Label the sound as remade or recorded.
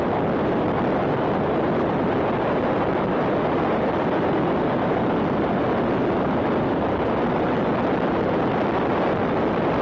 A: recorded